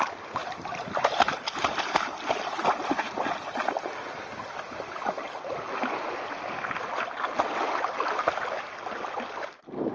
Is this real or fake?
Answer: real